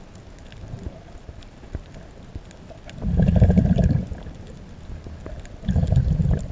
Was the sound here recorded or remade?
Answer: recorded